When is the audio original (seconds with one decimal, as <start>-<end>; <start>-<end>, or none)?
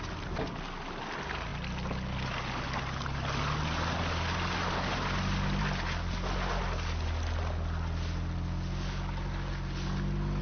0.0-10.4